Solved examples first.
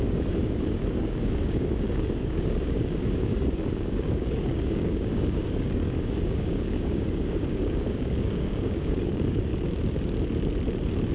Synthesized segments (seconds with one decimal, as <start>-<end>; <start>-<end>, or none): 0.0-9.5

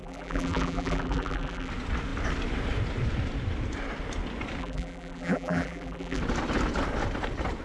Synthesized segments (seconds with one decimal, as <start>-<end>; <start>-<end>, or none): 0.0-1.7; 4.6-6.2

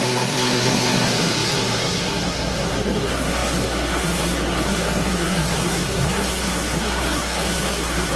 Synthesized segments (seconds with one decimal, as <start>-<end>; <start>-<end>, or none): 0.0-8.2

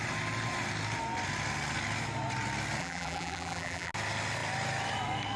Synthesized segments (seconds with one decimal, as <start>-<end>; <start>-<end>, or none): 2.8-3.9

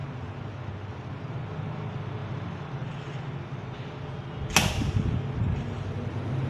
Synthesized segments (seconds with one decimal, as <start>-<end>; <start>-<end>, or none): none

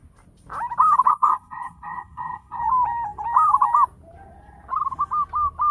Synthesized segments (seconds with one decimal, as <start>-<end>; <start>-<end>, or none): 1.1-2.6

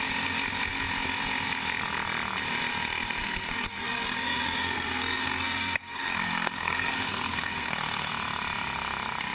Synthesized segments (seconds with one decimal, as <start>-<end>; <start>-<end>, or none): 3.2-8.1